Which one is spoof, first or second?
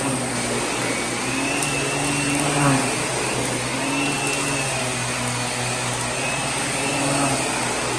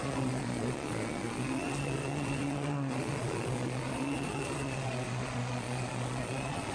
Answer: second